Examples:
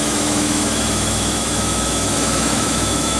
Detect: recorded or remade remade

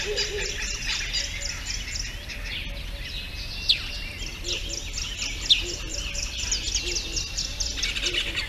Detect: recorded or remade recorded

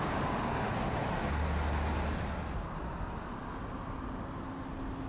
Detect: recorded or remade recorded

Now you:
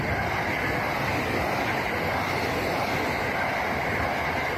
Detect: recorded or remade recorded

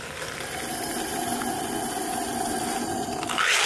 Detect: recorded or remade recorded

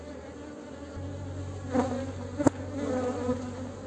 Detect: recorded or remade recorded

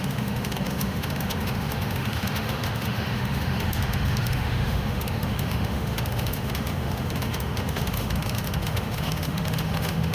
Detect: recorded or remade remade